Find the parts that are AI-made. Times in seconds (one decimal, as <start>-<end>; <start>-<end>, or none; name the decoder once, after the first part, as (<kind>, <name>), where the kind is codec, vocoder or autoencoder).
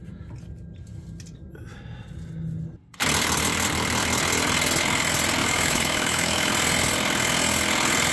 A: 5.4-6.5 (autoencoder, DAC-VAE)